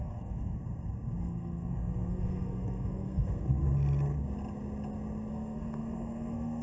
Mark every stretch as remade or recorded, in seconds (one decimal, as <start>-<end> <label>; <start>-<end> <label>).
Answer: 0.0-0.6 remade; 0.6-1.2 recorded; 1.2-3.6 remade; 3.6-5.3 recorded; 5.3-6.6 remade